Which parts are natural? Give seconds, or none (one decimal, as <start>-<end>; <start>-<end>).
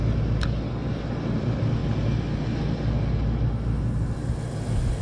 0.0-5.0